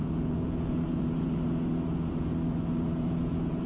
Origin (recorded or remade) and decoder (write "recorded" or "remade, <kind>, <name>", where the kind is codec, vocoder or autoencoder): remade, vocoder, Vocos